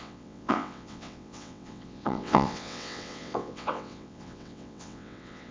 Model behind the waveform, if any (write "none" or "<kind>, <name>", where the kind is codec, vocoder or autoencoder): vocoder, WaveNeXt